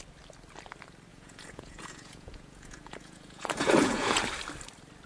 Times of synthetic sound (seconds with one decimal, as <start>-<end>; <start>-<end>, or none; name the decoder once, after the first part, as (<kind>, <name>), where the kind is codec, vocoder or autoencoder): 1.1-4.2 (vocoder, Vocos)